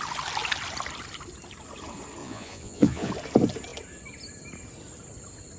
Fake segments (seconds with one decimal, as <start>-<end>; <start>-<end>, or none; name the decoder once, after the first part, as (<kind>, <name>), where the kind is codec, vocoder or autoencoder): 2.2-3.1 (vocoder, Vocos)